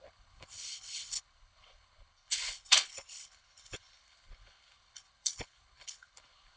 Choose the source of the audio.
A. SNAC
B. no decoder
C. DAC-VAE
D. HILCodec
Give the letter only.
D